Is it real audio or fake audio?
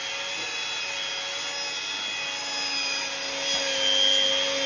real